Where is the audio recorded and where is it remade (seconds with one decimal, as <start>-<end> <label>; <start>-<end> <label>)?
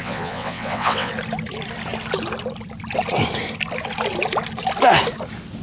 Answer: 0.0-1.1 remade; 1.1-5.6 recorded